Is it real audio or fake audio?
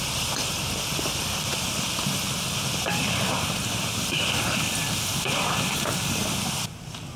fake